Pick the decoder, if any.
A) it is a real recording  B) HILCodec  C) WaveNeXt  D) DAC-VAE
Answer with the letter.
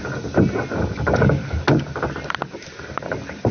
A